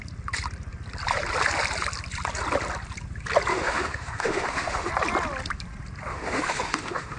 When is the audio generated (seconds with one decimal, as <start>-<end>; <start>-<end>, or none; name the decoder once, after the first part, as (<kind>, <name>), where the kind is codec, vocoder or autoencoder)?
3.5-4.9 (autoencoder, DAC-VAE); 6.1-7.2